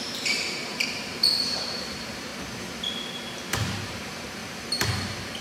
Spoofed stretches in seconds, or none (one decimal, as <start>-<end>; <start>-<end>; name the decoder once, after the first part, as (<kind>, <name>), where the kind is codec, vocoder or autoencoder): 0.0-2.3 (vocoder, BigVGAN v2); 3.5-4.4